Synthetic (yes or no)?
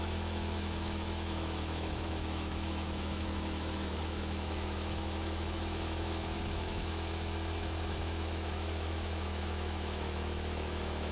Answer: yes